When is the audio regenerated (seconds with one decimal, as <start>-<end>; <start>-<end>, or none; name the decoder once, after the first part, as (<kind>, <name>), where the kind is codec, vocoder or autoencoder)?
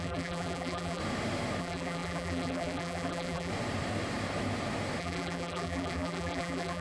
0.0-1.0 (vocoder, BigVGAN v2); 1.6-3.5; 5.0-6.8